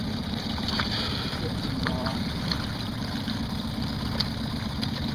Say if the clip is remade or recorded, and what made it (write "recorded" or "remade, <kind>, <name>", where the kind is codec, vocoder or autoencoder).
remade, vocoder, BigVGAN v2